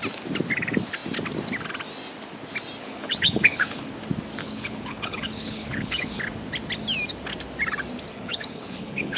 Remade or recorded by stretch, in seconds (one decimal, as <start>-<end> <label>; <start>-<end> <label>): 0.0-2.8 recorded; 2.8-3.9 remade; 3.9-4.4 recorded; 4.4-6.2 remade; 6.2-8.1 recorded; 8.1-9.2 remade

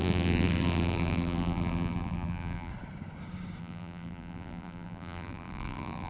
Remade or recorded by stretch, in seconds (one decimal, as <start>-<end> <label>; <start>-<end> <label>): 0.0-2.7 remade; 2.7-3.6 recorded; 3.6-6.1 remade

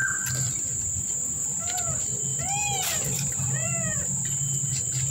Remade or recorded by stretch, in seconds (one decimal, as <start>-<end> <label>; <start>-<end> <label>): 0.0-1.8 remade; 1.8-2.3 recorded; 2.3-5.1 remade